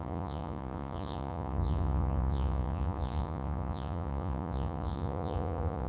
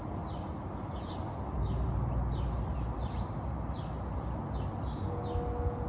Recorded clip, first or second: second